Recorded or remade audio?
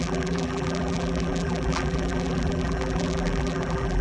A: remade